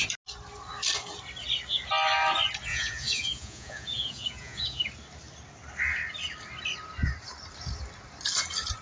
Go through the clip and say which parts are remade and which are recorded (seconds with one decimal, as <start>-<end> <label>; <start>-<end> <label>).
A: 0.0-2.7 recorded; 2.7-4.8 remade; 4.8-8.8 recorded